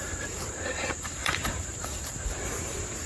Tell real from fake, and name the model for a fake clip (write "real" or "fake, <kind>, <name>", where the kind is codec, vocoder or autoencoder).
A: fake, vocoder, BigVGAN v2